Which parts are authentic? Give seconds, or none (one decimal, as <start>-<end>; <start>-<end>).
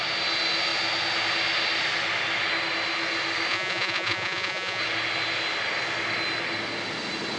0.0-3.5; 4.8-7.4